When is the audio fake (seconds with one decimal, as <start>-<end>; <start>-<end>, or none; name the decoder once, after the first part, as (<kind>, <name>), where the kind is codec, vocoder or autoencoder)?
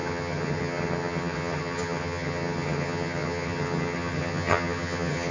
0.0-5.3 (vocoder, HiFi-GAN)